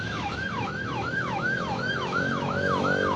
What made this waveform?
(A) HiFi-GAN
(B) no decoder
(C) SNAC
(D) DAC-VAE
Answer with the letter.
D